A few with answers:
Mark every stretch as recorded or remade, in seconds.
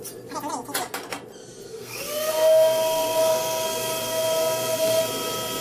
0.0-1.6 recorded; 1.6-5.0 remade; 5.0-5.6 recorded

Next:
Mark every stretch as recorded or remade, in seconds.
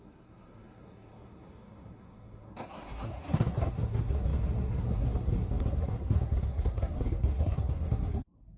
0.0-8.6 remade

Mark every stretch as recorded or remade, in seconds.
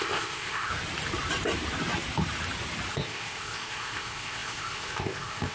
0.0-0.7 remade; 0.7-2.9 recorded; 2.9-5.5 remade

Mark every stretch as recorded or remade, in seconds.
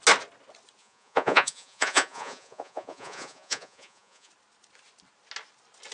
0.0-0.8 recorded; 0.8-4.3 remade; 4.3-5.9 recorded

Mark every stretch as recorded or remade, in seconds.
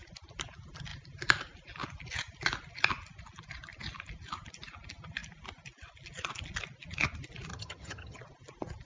0.0-7.5 recorded; 7.5-8.2 remade; 8.2-8.9 recorded